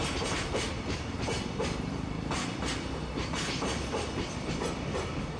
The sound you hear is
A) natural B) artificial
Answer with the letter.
A